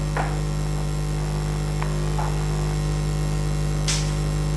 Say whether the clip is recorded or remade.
recorded